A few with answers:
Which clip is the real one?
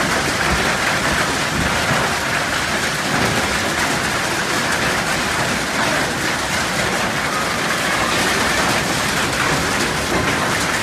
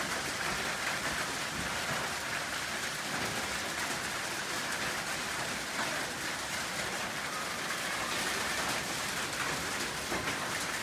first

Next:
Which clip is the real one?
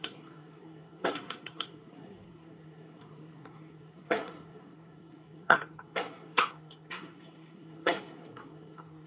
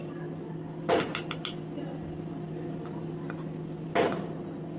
second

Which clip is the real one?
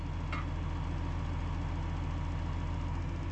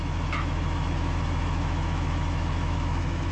first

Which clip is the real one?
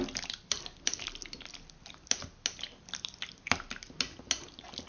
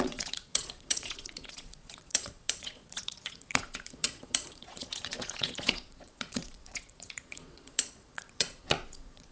first